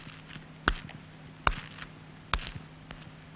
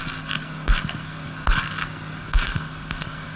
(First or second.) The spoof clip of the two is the second